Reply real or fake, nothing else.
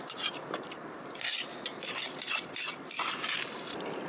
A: real